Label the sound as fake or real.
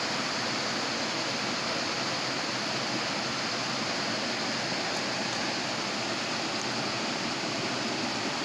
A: real